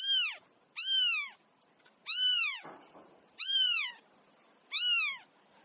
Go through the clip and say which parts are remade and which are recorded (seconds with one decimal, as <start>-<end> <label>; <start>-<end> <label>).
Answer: 0.0-2.3 recorded; 2.3-3.9 remade; 3.9-5.6 recorded